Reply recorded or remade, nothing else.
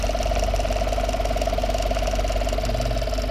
recorded